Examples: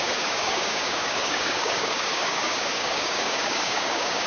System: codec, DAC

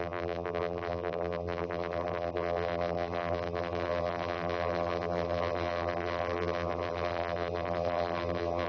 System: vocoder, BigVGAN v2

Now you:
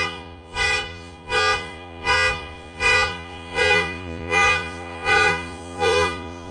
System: vocoder, Vocos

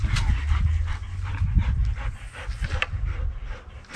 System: none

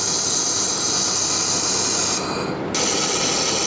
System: none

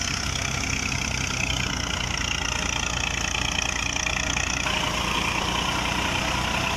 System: none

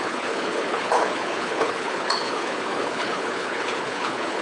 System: codec, HILCodec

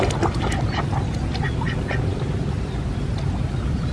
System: none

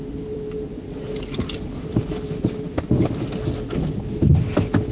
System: vocoder, BigVGAN v2